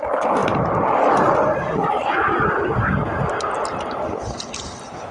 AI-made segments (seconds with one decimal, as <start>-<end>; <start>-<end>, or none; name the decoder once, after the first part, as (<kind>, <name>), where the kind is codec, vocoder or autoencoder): 0.4-2.9 (vocoder, BigVGAN v2)